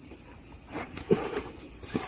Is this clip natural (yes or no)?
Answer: yes